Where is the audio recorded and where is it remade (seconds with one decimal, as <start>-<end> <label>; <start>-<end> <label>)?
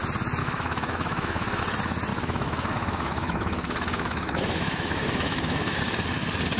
0.0-0.4 recorded; 0.4-1.6 remade; 1.6-2.1 recorded; 2.1-5.8 remade; 5.8-6.6 recorded